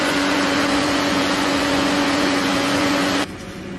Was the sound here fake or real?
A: fake